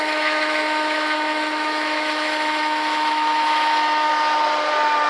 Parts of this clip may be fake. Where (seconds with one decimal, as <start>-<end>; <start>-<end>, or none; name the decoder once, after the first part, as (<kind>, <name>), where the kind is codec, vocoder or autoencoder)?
0.0-4.1 (autoencoder, DAC-VAE)